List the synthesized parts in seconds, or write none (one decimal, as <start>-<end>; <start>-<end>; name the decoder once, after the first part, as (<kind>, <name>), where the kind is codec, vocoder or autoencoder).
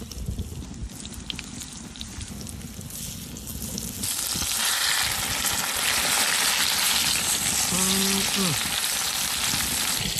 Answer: none